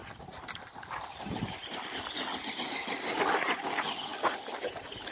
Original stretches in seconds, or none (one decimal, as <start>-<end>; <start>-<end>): 0.0-5.1